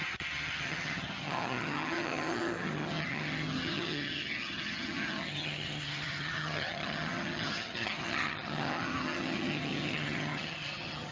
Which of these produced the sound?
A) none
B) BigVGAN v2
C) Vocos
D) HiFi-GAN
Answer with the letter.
D